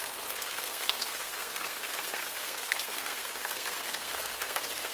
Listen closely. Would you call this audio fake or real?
fake